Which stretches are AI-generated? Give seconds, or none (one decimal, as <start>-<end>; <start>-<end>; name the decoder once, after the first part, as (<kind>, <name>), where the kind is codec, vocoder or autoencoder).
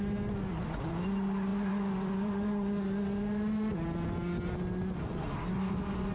none